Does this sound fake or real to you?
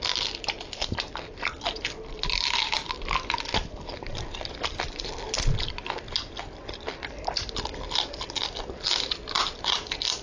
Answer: real